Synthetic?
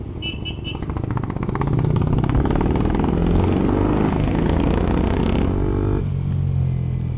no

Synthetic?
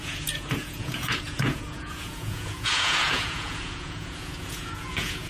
yes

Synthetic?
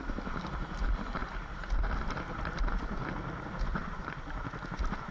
no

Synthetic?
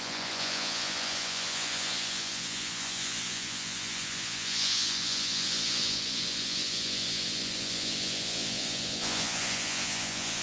yes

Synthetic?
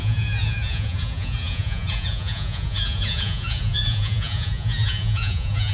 yes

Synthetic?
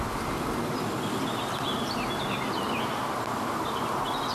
no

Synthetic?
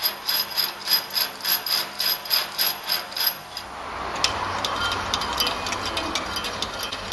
no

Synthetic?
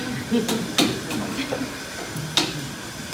no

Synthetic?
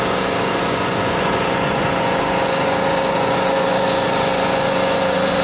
yes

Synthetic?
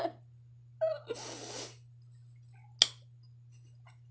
no